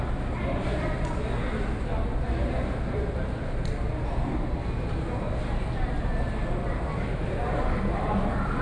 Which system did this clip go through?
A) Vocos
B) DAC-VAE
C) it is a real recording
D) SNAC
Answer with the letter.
C